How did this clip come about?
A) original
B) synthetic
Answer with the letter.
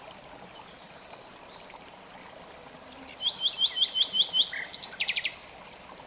A